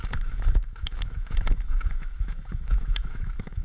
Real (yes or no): no